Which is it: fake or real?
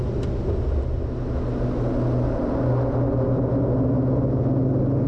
real